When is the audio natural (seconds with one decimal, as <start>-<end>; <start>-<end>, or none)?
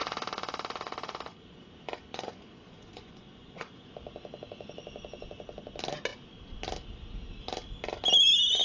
3.9-8.6